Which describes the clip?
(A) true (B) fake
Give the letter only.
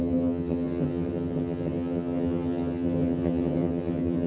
B